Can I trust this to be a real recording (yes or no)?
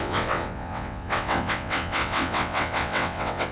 no